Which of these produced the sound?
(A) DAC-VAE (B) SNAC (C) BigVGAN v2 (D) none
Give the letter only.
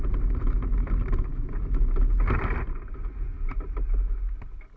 D